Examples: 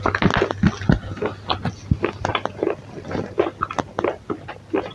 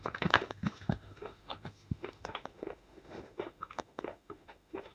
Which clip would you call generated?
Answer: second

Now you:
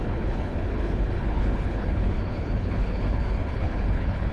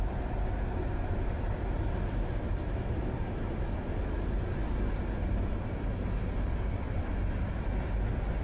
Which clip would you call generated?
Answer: first